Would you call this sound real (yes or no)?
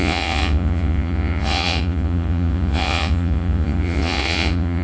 no